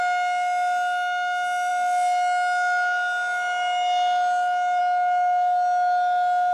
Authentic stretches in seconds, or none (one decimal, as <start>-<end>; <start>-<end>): 0.0-6.5